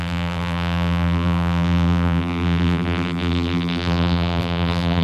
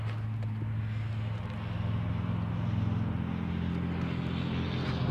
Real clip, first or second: second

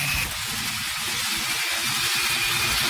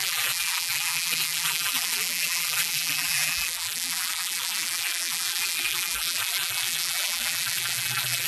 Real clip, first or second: first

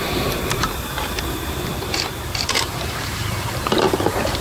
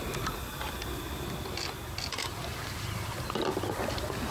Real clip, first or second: second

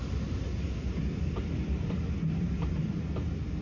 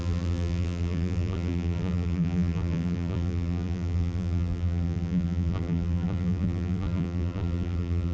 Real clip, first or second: first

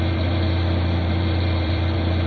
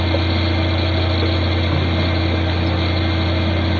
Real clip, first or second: second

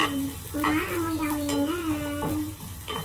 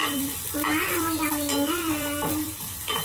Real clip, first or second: first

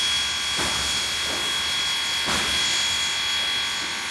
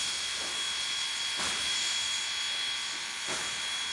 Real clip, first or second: first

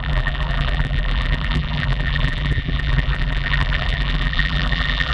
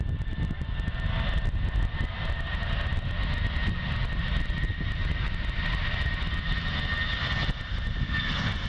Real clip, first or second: second